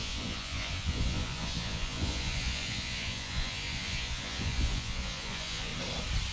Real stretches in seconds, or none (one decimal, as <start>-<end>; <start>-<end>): 5.7-6.3